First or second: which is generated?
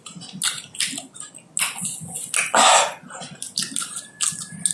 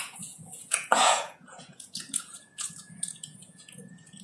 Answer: second